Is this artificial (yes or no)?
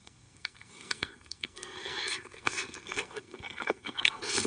yes